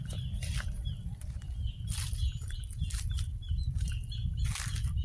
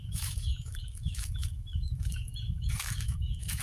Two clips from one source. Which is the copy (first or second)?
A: second